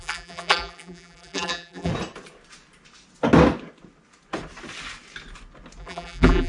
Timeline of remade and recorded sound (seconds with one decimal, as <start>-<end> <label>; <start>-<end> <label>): 0.0-1.9 remade; 1.9-5.8 recorded; 5.8-6.5 remade